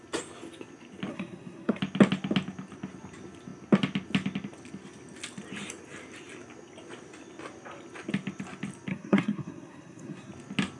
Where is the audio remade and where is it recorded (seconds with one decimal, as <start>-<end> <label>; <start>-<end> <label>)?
0.0-1.1 recorded; 1.1-1.8 remade; 1.8-8.9 recorded; 8.9-10.3 remade; 10.3-10.8 recorded